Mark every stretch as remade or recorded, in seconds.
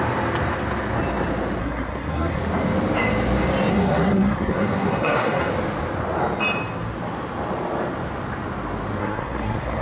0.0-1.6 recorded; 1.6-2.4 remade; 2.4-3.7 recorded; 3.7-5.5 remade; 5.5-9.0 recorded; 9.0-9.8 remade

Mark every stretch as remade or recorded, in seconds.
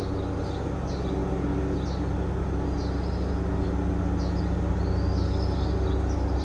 0.0-6.4 recorded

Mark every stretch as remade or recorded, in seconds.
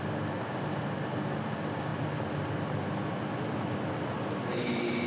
0.0-5.1 recorded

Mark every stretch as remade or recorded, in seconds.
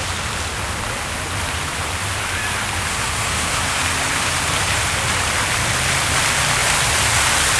0.0-2.9 recorded; 2.9-3.8 remade; 3.8-7.6 recorded